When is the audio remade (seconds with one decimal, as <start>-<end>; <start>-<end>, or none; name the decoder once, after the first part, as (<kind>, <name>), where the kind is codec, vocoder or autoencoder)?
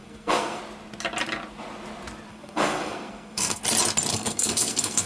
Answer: 0.0-0.6 (codec, SNAC); 2.3-3.6; 4.1-5.1